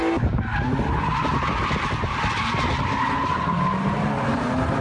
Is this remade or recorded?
recorded